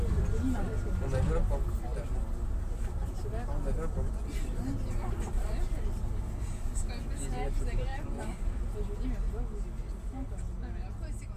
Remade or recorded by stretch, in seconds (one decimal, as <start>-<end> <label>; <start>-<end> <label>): 0.0-7.9 recorded; 7.9-8.6 remade; 8.6-11.4 recorded

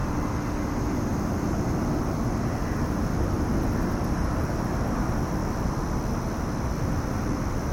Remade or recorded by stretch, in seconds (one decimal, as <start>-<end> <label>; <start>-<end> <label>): 0.0-7.7 recorded

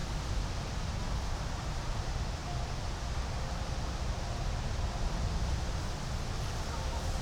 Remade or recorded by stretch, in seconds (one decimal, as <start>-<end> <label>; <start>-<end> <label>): 0.0-7.2 recorded

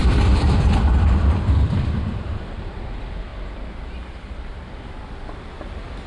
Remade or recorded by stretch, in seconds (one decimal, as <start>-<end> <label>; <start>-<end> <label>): 0.0-6.1 remade

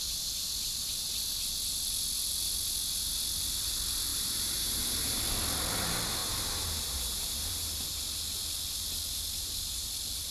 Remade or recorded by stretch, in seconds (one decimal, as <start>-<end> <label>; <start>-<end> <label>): 0.0-4.1 recorded; 4.1-5.2 remade; 5.2-6.2 recorded; 6.2-8.0 remade; 8.0-10.3 recorded

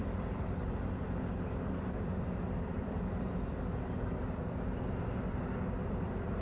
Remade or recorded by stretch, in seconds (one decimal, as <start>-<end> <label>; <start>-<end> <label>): 0.0-3.8 remade; 3.8-6.4 recorded

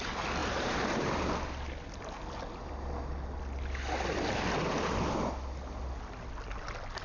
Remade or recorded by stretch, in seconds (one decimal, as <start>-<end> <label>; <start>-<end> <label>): 0.0-0.4 recorded; 0.4-1.2 remade; 1.2-7.0 recorded

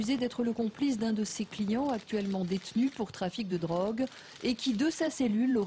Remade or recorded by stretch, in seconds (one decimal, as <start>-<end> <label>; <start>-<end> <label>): 0.0-1.3 remade; 1.3-2.1 recorded; 2.1-3.6 remade; 3.6-4.7 recorded; 4.7-5.7 remade